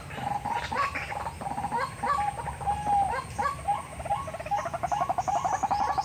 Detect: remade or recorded recorded